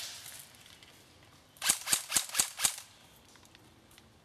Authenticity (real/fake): real